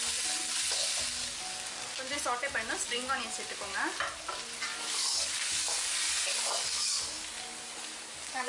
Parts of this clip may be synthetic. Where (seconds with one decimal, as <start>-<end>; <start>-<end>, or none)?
1.2-2.0; 4.7-8.5